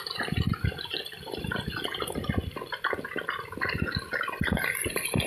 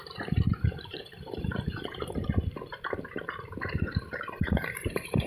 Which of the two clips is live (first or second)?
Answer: first